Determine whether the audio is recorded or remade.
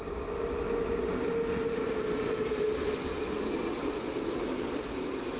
recorded